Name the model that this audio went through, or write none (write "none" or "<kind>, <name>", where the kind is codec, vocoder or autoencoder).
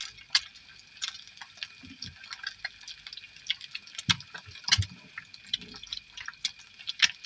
none